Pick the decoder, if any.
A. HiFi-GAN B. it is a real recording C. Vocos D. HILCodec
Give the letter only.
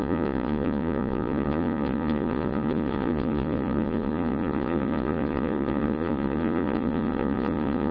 C